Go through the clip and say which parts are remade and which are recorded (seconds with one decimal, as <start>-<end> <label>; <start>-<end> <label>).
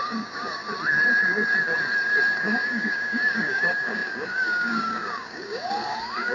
0.0-0.6 remade; 0.6-2.3 recorded; 2.3-6.3 remade